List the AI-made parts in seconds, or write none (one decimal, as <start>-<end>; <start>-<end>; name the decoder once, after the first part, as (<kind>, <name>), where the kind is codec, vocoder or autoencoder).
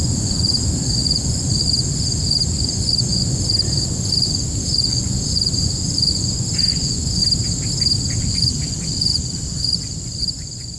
0.0-7.2 (vocoder, Vocos); 8.2-10.8